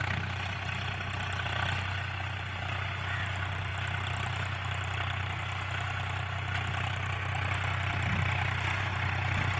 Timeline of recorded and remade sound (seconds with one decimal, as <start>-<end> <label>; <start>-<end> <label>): 0.0-9.6 recorded